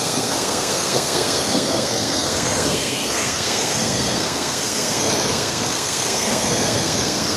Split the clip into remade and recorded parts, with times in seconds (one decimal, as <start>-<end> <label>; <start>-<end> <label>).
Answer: 0.0-7.4 remade